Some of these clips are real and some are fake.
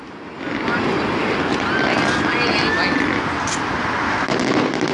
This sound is real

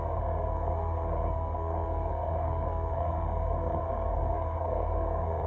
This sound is fake